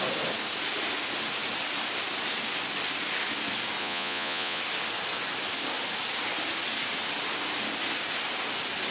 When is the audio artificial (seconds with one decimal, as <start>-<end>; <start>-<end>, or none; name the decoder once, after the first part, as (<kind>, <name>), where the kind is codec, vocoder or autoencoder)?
3.8-4.6 (vocoder, Vocos)